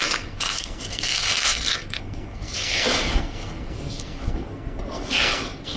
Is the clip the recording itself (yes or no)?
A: no